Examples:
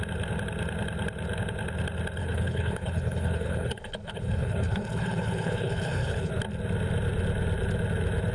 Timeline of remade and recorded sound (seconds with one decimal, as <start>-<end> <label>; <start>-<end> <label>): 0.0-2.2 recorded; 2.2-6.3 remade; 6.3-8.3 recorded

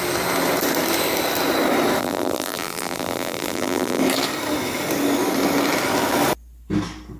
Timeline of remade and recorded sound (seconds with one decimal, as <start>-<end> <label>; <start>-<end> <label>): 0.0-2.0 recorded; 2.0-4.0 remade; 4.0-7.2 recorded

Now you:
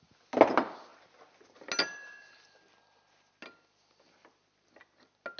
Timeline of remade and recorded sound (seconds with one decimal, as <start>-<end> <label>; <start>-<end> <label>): 0.0-5.4 recorded

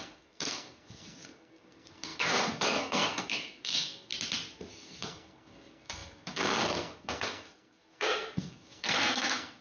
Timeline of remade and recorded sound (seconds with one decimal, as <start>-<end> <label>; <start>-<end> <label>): 0.0-4.1 remade; 4.1-4.7 recorded; 4.7-9.6 remade